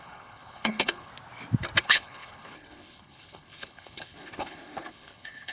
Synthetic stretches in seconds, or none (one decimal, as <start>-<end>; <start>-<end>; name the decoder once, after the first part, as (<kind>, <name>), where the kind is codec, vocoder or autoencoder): 0.0-1.1 (codec, HILCodec); 1.8-5.5